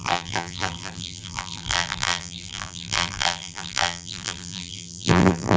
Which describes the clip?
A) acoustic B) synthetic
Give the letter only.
B